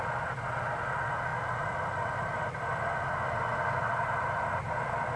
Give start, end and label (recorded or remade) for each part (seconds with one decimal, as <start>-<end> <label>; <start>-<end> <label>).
0.0-5.2 recorded